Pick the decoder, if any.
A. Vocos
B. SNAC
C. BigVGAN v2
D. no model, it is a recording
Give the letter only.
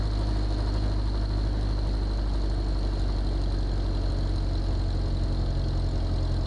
D